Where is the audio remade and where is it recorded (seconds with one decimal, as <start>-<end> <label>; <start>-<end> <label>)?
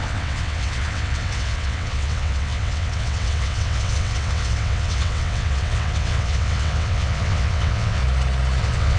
0.0-8.0 remade; 8.0-8.6 recorded; 8.6-9.0 remade